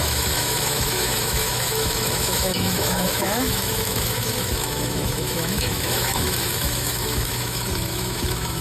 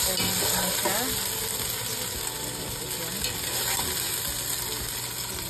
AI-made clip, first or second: first